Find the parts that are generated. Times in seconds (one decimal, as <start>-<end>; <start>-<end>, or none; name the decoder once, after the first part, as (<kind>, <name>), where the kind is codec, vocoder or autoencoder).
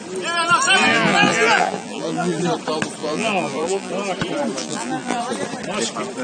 0.9-2.4 (vocoder, BigVGAN v2); 3.0-3.9; 4.6-5.2